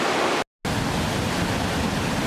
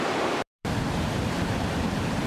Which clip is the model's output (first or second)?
second